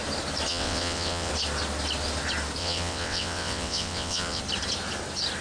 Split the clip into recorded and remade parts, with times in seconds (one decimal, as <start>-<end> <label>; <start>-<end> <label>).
0.0-0.5 recorded; 0.5-1.3 remade; 1.3-2.6 recorded; 2.6-4.4 remade; 4.4-5.4 recorded